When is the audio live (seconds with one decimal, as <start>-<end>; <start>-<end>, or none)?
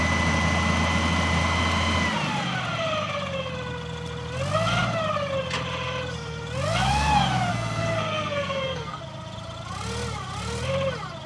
0.0-7.5; 9.0-11.3